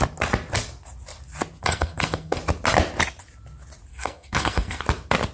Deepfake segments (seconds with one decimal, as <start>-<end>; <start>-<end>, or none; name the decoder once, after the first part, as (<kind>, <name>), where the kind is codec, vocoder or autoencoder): 1.6-2.4 (codec, SNAC); 3.9-4.8